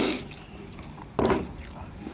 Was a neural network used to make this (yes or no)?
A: no